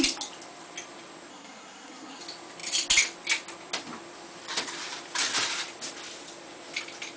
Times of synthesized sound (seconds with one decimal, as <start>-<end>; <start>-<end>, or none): 1.3-2.2